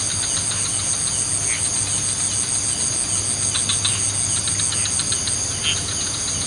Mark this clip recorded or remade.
recorded